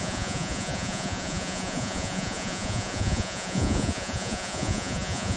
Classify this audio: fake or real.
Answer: fake